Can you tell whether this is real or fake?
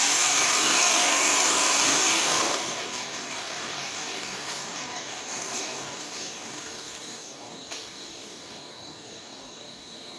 fake